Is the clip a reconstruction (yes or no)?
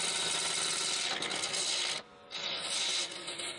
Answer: no